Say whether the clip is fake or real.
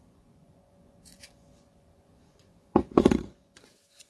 fake